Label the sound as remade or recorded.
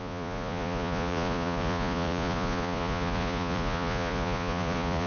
remade